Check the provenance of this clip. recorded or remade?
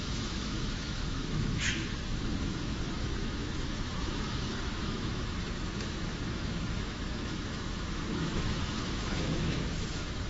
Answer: remade